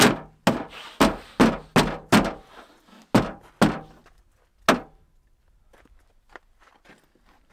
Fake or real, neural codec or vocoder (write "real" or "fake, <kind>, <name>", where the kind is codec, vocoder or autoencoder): real